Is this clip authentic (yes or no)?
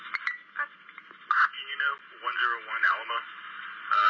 yes